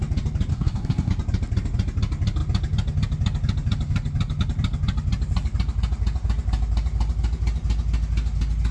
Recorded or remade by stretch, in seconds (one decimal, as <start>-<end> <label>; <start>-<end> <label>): 0.0-0.5 recorded; 0.5-1.1 remade; 1.1-8.7 recorded